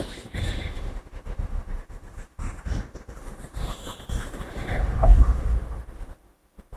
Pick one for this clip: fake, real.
fake